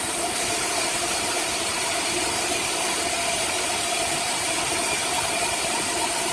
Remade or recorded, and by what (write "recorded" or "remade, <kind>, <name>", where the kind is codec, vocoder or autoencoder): remade, vocoder, BigVGAN v2